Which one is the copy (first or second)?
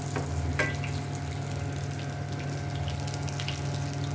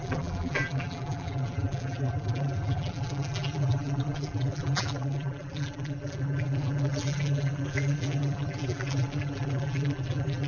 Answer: second